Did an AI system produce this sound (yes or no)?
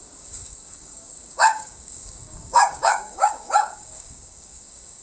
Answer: yes